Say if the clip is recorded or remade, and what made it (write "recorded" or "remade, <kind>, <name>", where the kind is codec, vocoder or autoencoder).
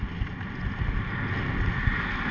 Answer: recorded